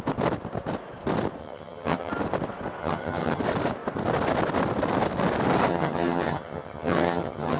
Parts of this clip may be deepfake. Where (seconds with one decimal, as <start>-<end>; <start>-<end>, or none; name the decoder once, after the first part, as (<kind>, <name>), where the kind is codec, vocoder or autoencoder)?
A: 1.4-2.1 (vocoder, HiFi-GAN); 2.8-3.4; 5.7-7.6